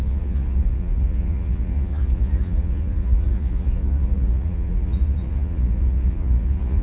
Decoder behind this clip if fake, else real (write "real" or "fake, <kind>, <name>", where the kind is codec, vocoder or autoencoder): fake, vocoder, Vocos